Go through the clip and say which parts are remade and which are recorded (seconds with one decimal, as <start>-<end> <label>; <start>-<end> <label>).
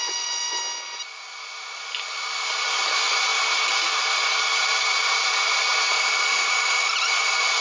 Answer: 0.0-0.6 remade; 0.6-7.6 recorded